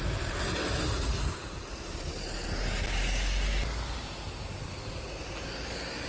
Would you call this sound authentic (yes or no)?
yes